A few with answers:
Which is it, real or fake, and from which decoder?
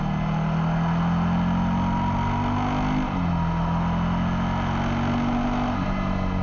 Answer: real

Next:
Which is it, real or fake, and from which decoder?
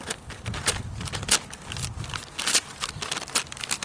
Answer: real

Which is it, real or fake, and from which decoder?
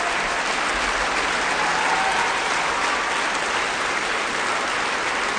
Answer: real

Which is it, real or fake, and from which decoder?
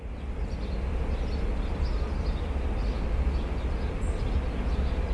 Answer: real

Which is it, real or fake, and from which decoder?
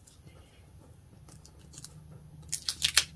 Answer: real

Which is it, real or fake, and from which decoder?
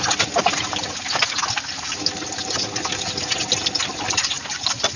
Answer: real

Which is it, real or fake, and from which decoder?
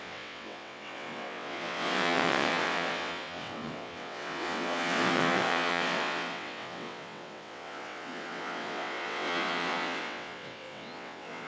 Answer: fake, vocoder, WaveNeXt